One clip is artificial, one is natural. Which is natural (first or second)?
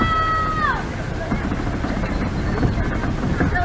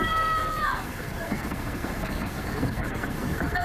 first